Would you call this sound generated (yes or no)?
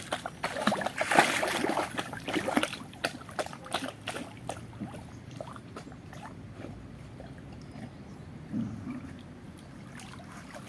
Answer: no